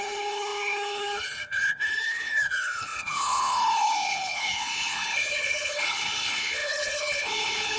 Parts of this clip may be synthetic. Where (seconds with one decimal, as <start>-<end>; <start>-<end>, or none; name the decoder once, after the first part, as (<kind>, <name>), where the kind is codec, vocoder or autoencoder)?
0.0-7.8 (codec, HILCodec)